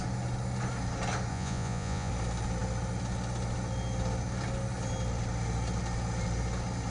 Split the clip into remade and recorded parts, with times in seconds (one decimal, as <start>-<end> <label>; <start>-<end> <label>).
0.0-1.3 recorded; 1.3-2.1 remade; 2.1-6.9 recorded